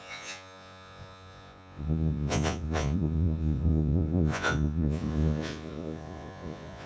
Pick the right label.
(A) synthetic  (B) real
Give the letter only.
A